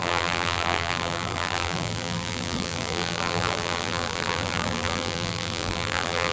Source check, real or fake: fake